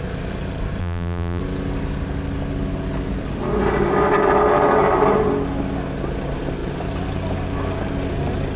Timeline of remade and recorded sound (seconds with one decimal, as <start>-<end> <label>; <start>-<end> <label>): 0.0-0.8 recorded; 0.8-1.4 remade; 1.4-8.6 recorded